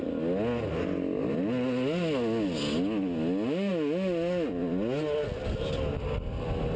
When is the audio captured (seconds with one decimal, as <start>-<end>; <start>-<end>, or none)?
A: 0.0-6.8